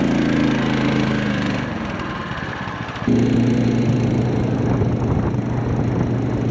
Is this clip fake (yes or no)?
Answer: no